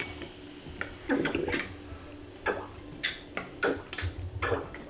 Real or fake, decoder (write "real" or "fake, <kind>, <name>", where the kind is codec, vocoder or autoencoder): real